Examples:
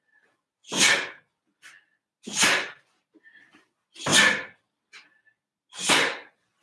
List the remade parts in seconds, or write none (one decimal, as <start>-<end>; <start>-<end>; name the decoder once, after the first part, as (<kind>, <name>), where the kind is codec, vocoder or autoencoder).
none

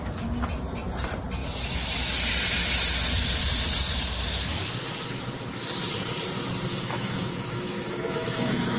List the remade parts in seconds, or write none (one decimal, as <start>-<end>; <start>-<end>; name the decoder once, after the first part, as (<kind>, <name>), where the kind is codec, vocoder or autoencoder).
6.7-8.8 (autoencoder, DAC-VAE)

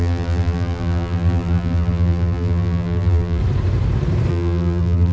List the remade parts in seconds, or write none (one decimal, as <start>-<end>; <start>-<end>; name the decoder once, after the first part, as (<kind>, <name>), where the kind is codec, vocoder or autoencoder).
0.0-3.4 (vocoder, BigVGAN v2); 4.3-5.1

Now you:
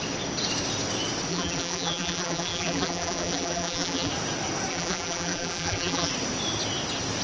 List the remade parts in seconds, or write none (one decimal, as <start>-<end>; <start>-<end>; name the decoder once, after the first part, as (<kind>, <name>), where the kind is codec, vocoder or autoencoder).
1.3-4.1 (vocoder, BigVGAN v2); 4.7-6.1